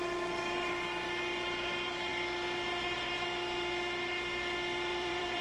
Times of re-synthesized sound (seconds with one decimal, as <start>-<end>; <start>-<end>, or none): 4.9-5.4